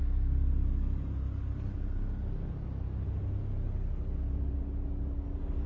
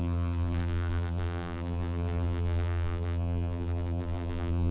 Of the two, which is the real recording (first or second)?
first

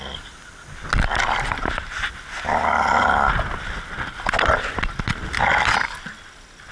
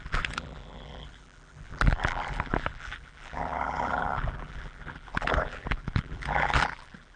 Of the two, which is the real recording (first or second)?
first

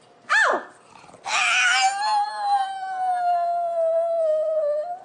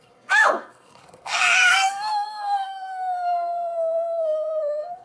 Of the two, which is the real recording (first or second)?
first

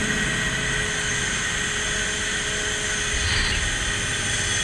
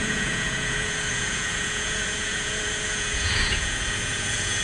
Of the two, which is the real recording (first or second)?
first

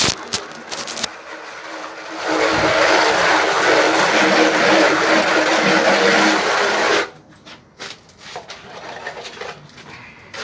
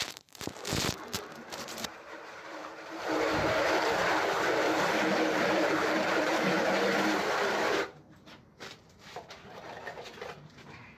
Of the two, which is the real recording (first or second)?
first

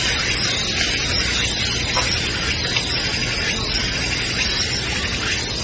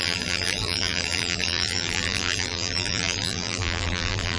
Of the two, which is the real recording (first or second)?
first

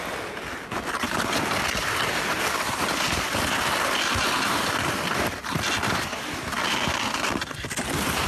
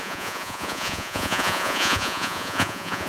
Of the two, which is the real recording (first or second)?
first